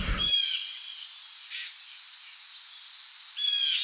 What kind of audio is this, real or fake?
real